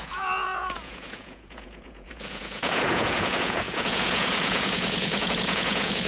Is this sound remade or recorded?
remade